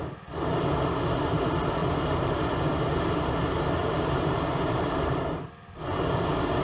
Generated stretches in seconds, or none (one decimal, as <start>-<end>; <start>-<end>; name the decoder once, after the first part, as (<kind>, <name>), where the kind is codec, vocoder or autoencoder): 1.8-5.3 (vocoder, BigVGAN v2)